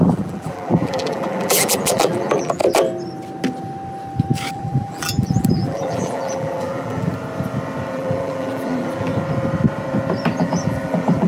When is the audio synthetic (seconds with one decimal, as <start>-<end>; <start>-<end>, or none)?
0.0-2.6; 4.5-7.1; 7.9-9.1; 10.4-11.3

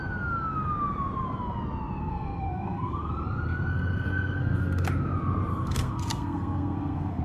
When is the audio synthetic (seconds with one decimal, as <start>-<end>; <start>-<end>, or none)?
2.0-3.1; 3.7-4.9; 5.5-7.2

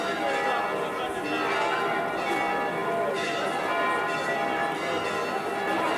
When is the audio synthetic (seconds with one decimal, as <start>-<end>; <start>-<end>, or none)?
none